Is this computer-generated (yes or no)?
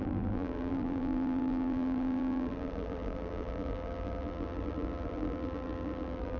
yes